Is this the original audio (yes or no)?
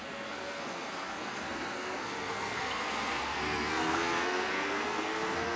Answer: no